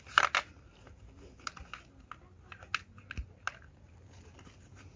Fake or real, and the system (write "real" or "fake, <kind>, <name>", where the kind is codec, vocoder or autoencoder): real